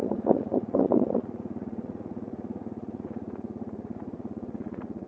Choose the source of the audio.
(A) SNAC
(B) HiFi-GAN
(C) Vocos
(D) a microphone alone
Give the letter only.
C